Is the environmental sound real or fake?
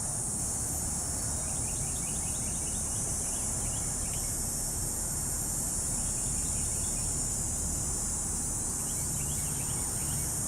fake